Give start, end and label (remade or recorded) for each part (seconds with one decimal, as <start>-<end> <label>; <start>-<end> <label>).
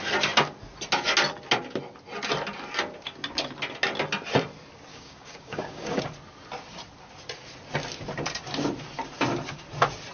0.0-4.9 recorded; 4.9-6.0 remade; 6.0-10.1 recorded